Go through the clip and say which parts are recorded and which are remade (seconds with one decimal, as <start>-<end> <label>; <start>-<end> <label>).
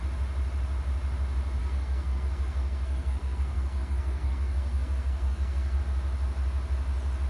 0.0-1.6 recorded; 1.6-5.8 remade; 5.8-7.3 recorded